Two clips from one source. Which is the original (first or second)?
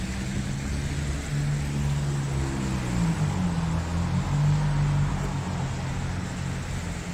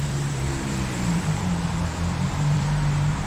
first